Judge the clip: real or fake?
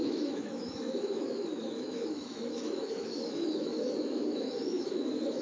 fake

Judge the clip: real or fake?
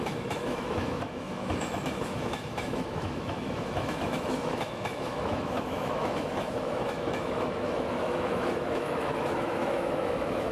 fake